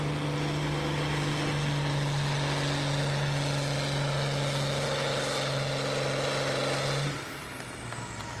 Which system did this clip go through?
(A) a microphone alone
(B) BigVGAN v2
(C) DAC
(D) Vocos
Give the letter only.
A